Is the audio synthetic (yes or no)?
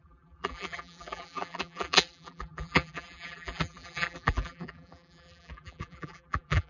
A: yes